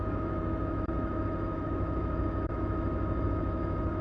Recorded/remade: remade